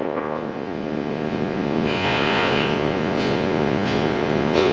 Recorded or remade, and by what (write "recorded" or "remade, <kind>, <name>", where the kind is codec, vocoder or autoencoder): remade, vocoder, Vocos